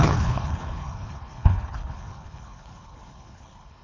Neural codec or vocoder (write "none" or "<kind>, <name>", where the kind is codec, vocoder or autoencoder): codec, HILCodec